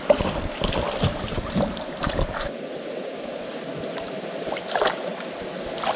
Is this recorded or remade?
recorded